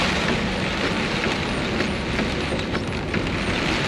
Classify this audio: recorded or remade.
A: recorded